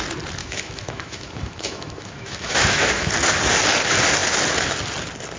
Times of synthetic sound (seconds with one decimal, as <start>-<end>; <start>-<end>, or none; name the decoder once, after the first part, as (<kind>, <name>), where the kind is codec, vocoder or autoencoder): 0.4-3.1 (autoencoder, DAC-VAE)

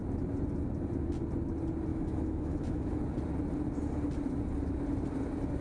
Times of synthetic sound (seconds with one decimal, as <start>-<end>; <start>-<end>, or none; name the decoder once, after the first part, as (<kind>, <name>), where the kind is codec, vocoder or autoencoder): 1.9-3.0 (autoencoder, DAC-VAE)

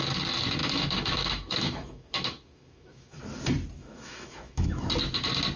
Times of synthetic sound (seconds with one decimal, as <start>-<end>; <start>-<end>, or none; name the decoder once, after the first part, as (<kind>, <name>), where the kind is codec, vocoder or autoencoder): 0.6-3.2 (autoencoder, DAC-VAE); 3.8-4.9

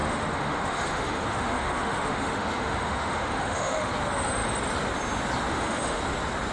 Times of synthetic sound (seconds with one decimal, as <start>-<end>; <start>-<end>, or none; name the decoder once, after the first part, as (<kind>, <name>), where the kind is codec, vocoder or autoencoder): 0.0-3.9 (autoencoder, DAC-VAE); 5.5-6.0

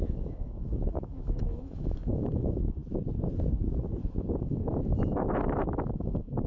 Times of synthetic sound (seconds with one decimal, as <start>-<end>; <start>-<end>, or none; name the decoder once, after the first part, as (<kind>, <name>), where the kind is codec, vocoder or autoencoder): 0.0-2.8 (autoencoder, DAC-VAE); 4.4-6.5

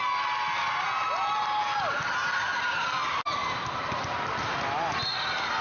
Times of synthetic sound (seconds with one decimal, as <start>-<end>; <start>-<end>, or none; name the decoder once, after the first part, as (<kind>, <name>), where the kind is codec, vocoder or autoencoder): none

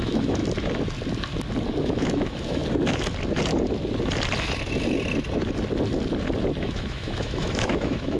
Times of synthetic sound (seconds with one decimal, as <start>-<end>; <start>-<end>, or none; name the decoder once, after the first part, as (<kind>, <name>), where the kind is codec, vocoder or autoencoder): 0.0-0.4 (autoencoder, DAC-VAE); 1.8-2.6; 6.6-8.2

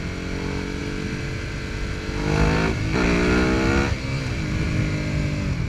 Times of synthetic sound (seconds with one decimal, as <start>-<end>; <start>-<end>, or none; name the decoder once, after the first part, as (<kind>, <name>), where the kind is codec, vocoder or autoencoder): none